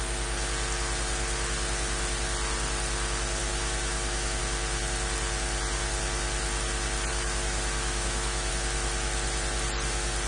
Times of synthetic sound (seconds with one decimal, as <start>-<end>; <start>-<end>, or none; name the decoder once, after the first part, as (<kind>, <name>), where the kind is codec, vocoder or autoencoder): 3.4-4.4 (autoencoder, DAC-VAE); 7.1-8.5